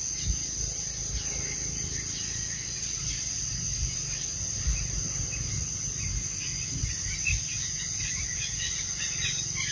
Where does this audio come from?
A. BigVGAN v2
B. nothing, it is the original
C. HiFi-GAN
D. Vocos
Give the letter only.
B